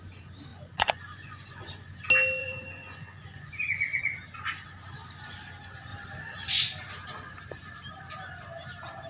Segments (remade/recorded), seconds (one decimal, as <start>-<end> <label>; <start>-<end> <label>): 0.0-0.5 recorded; 0.5-2.0 remade; 2.0-2.4 recorded; 2.4-4.0 remade; 4.0-9.1 recorded